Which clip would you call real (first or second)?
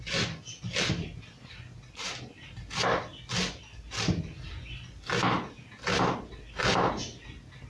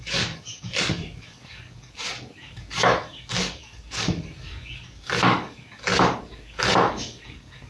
first